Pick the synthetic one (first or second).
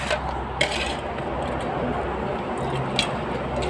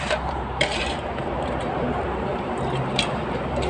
second